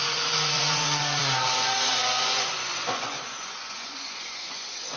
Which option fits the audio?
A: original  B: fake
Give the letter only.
B